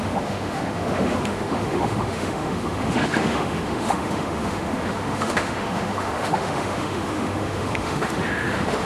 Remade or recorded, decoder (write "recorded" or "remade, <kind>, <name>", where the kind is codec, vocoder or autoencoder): remade, autoencoder, DAC-VAE